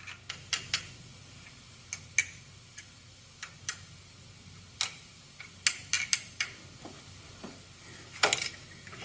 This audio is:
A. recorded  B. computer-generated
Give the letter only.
A